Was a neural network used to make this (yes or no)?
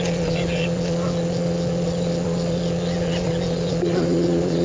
yes